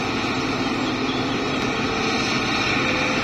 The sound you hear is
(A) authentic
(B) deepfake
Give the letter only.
A